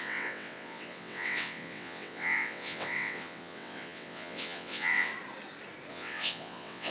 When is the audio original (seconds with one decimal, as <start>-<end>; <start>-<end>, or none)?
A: 5.1-5.9